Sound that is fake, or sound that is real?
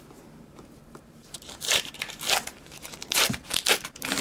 fake